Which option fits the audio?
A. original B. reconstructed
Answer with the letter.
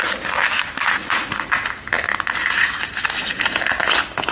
A